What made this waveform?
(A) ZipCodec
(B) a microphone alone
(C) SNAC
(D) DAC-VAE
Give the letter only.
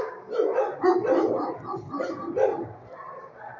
B